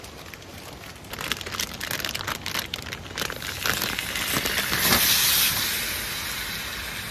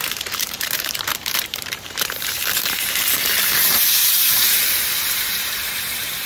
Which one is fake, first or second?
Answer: second